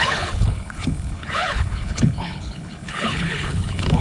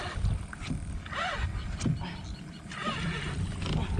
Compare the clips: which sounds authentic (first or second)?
second